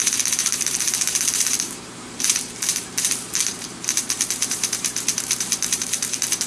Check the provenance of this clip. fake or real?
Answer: fake